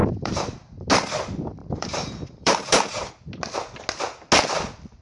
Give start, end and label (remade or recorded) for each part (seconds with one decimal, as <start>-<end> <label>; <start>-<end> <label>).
0.0-0.9 remade; 0.9-1.6 recorded; 1.6-3.1 remade; 3.1-5.0 recorded